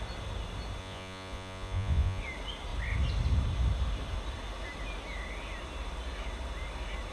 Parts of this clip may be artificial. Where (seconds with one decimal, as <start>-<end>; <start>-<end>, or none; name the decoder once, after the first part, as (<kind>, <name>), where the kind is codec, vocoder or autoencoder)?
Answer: 0.8-2.2 (vocoder, Vocos)